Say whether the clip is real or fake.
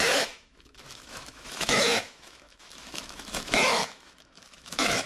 fake